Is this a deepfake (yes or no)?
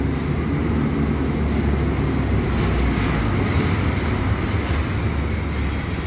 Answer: no